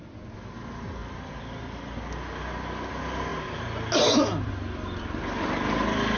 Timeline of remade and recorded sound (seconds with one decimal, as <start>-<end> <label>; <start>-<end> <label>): 0.0-6.2 recorded